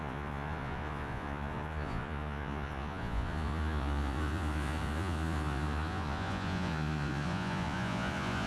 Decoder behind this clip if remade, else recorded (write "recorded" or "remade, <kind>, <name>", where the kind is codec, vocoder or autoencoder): remade, vocoder, Vocos